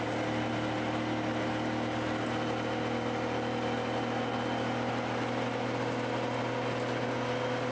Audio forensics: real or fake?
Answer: real